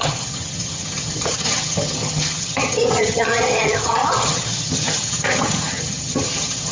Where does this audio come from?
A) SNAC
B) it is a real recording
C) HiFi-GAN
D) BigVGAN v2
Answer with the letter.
C